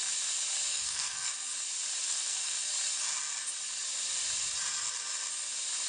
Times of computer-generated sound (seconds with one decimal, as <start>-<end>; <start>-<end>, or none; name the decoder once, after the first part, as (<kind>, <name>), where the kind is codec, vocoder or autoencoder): 0.7-1.3 (codec, SNAC); 2.0-2.7